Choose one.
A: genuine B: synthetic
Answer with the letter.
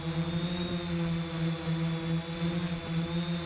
A